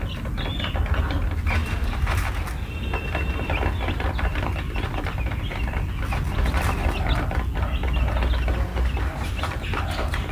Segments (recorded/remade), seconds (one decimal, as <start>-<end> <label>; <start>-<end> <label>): 0.0-1.6 recorded; 1.6-2.3 remade; 2.3-8.7 recorded; 8.7-9.3 remade; 9.3-10.3 recorded